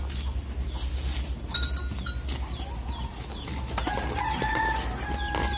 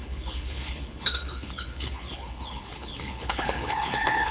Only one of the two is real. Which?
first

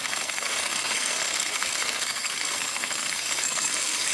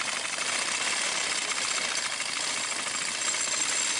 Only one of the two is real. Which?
second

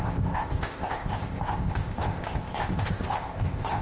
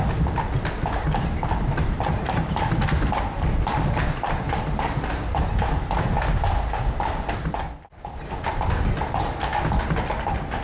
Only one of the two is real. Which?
second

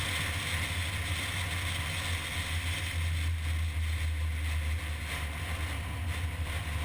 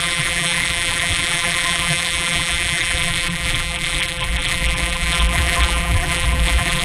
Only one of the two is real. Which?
first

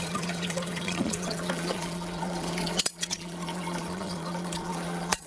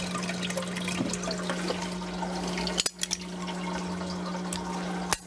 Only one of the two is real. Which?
second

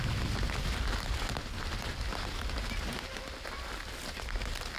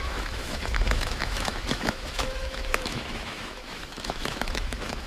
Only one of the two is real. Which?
first